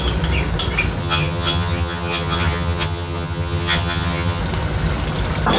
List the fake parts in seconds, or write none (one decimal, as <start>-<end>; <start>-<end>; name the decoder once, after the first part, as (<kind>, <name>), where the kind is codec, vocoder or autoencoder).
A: 1.0-4.4 (vocoder, HiFi-GAN)

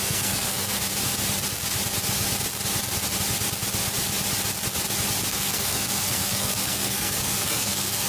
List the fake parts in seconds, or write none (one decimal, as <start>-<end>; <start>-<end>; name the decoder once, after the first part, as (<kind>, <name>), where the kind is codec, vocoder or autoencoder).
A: 0.0-0.8 (codec, SNAC); 5.3-8.1

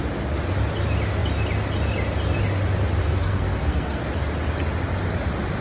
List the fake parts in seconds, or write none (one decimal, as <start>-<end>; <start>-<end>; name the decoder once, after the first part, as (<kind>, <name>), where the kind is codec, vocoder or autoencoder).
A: 3.0-4.0 (codec, SNAC)

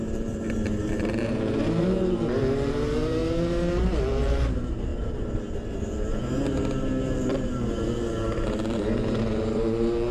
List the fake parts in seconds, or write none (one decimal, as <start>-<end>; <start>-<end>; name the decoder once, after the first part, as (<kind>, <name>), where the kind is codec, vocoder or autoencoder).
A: 0.0-10.1 (vocoder, BigVGAN v2)